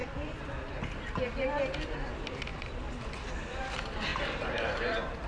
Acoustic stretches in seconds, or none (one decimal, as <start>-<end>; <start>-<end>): 0.8-2.5; 3.6-4.1